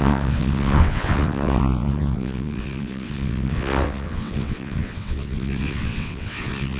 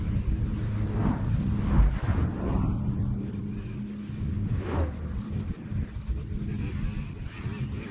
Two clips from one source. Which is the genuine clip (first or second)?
second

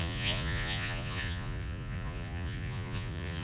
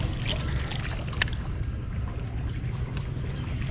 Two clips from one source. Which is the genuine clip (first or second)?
second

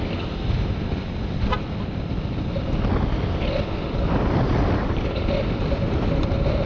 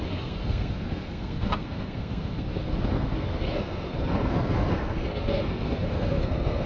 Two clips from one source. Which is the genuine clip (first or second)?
first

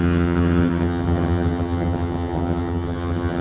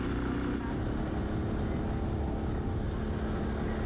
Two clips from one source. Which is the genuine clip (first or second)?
second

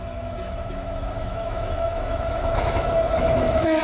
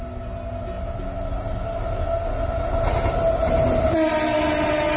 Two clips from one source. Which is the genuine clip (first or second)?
second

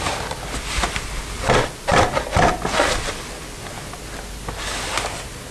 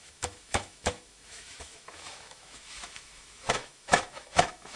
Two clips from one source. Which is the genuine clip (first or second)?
first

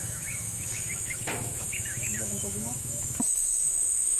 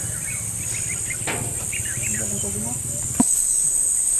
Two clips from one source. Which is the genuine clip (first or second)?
second